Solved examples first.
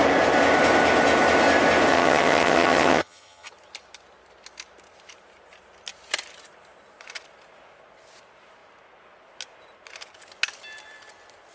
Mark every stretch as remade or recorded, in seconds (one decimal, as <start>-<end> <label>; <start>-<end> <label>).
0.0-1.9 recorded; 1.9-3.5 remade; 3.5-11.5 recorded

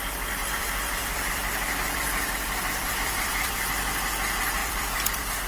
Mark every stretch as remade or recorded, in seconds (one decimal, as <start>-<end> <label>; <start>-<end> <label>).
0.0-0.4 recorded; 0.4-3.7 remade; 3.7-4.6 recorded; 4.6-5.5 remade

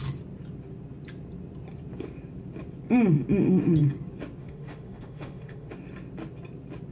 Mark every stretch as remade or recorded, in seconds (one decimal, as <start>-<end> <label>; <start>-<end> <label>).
0.0-4.4 recorded; 4.4-5.7 remade; 5.7-6.9 recorded